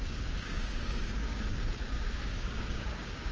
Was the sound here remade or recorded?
remade